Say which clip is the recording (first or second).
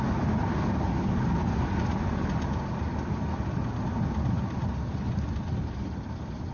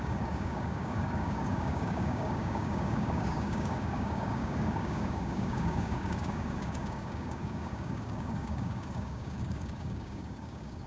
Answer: first